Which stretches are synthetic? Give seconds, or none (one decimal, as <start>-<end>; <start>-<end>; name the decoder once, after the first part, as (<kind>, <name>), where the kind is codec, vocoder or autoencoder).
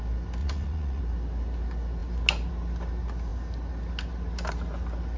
0.4-1.0 (vocoder, Vocos)